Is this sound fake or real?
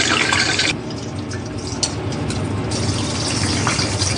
real